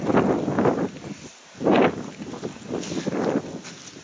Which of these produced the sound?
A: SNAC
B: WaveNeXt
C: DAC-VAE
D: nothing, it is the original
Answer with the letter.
D